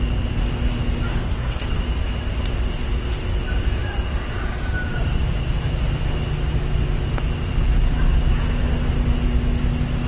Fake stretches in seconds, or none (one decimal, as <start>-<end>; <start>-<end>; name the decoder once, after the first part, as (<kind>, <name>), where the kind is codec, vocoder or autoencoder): 1.1-1.8 (codec, SNAC)